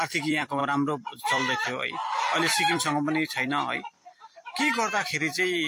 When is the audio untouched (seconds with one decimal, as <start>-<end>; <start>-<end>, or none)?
0.6-1.2